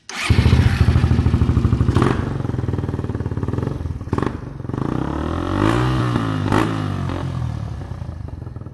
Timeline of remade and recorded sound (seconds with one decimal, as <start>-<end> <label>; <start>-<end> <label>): 0.0-8.7 recorded